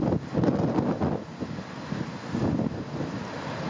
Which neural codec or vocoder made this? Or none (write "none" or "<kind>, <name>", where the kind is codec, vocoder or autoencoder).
none